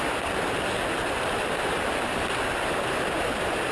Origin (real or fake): real